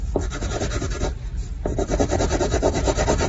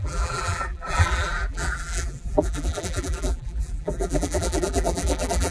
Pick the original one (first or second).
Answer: first